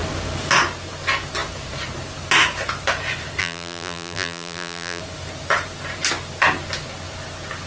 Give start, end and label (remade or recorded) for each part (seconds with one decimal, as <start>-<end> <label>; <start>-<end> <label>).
0.0-3.4 recorded; 3.4-5.0 remade; 5.0-7.7 recorded